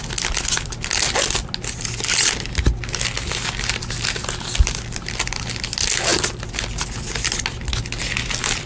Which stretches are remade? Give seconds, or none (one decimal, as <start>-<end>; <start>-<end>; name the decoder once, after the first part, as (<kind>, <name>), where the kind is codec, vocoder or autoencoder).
none